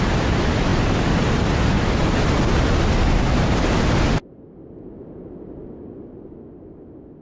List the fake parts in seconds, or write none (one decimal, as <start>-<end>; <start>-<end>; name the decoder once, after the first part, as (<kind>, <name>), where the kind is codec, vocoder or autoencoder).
none